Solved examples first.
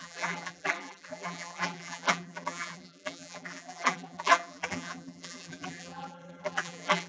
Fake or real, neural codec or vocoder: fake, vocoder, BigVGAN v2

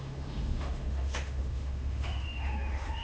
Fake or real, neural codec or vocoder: fake, autoencoder, DAC-VAE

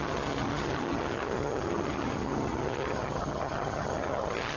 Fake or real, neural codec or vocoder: fake, vocoder, HiFi-GAN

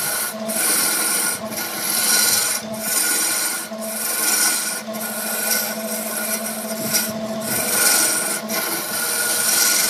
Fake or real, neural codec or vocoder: real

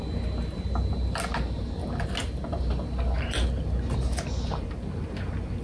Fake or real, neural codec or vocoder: real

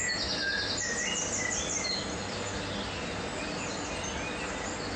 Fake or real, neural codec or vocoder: real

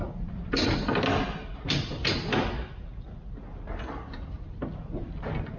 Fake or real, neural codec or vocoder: real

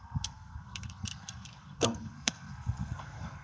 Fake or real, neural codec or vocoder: fake, codec, SNAC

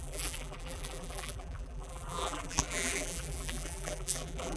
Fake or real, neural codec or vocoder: fake, vocoder, BigVGAN v2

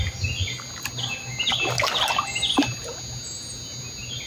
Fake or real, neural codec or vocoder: real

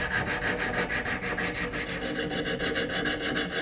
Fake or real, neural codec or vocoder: real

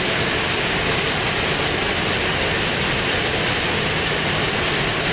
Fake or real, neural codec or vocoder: real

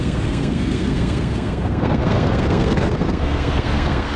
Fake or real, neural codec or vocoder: fake, codec, SNAC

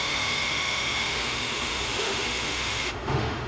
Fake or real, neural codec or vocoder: fake, autoencoder, DAC-VAE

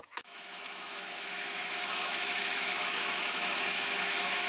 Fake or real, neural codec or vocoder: fake, autoencoder, DAC-VAE